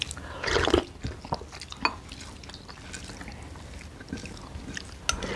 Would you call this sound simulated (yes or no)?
no